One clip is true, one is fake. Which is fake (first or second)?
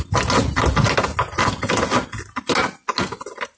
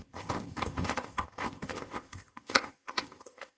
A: second